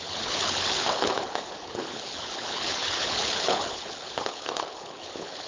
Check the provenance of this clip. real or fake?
fake